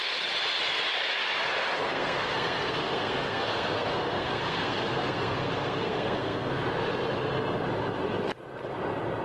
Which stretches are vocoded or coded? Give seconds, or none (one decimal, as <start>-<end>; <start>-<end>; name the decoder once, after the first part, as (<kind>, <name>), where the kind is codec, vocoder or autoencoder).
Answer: 1.9-6.5 (codec, SNAC)